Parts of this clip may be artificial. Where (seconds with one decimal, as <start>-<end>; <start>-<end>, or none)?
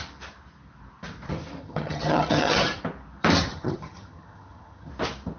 1.6-2.8; 3.5-4.9